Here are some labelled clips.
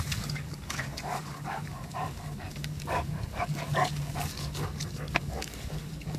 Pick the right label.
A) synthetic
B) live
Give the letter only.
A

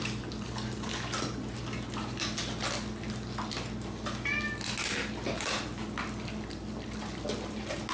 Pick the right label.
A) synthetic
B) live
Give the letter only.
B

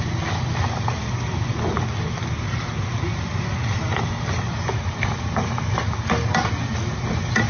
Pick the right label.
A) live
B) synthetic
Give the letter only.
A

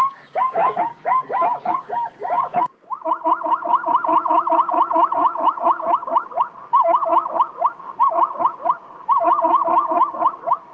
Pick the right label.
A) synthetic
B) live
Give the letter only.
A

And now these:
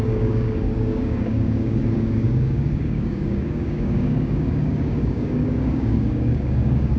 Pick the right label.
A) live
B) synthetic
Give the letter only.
B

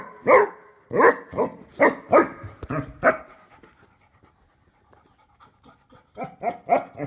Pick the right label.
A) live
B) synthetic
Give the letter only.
A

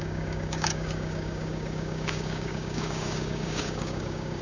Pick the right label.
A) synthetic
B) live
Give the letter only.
A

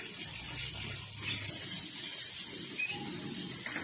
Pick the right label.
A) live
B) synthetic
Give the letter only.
A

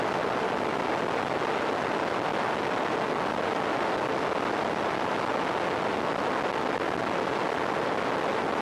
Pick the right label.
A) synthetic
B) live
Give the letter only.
B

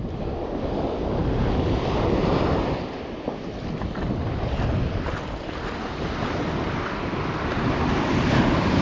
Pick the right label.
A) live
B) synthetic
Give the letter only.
A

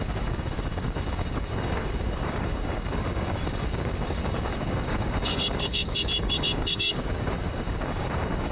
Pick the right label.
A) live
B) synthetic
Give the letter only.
B